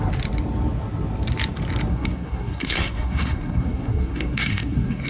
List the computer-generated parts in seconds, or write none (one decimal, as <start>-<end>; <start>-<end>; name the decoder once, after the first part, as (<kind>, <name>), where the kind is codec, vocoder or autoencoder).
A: 1.9-5.1 (codec, SNAC)